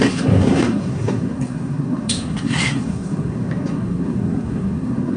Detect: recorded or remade remade